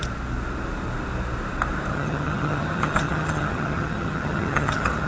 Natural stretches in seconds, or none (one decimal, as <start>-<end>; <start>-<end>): 0.0-1.9